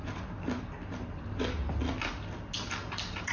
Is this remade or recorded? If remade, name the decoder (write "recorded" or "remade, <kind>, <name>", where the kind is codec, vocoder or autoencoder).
recorded